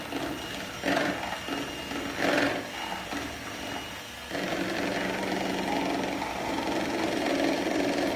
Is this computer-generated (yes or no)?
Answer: no